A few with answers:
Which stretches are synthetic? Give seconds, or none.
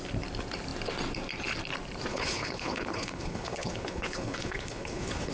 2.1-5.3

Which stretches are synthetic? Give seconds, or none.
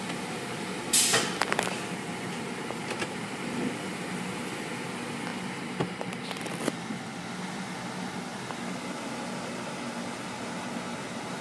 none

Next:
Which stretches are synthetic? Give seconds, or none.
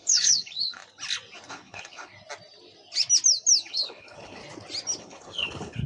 0.0-0.8; 1.5-2.1; 3.7-4.4; 5.0-5.9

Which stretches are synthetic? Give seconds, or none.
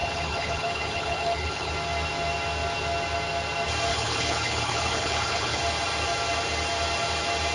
0.0-1.7; 3.9-5.6